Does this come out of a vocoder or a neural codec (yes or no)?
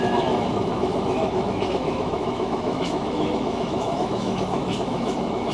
yes